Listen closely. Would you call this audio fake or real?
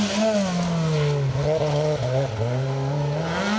real